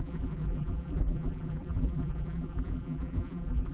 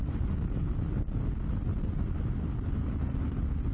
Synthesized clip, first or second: first